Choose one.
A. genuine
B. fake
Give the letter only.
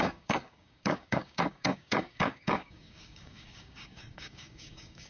B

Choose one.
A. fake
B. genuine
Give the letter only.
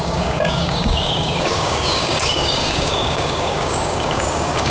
A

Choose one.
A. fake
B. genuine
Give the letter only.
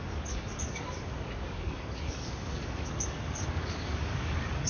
A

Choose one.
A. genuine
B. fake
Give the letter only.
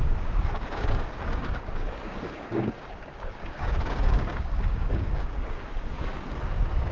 B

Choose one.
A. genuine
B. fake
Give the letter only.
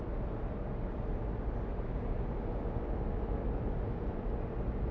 A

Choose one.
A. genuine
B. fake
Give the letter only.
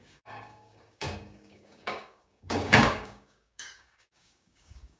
B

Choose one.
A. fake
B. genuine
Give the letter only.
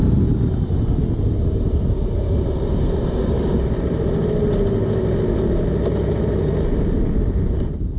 B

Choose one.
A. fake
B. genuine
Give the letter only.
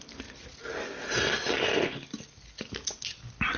B